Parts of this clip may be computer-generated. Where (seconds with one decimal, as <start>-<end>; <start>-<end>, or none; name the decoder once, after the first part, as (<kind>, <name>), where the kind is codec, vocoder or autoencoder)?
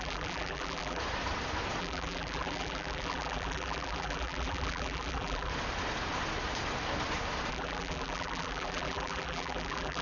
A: 0.0-1.0 (vocoder, BigVGAN v2); 1.8-5.5; 7.5-10.0